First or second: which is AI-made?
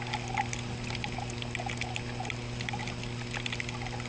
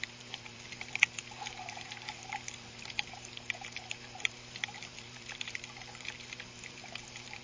second